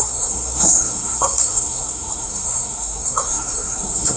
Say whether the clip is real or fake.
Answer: fake